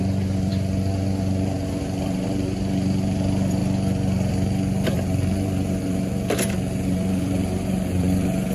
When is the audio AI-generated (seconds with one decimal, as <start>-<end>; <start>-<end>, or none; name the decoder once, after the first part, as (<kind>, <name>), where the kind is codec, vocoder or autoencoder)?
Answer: 0.0-0.5 (vocoder, BigVGAN v2); 1.2-3.6; 4.3-8.5